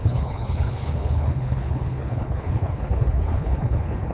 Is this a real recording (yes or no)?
no